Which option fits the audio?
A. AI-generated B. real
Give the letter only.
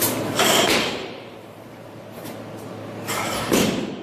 A